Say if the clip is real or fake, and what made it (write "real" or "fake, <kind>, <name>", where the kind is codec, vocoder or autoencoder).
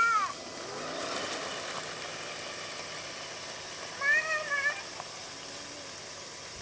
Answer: real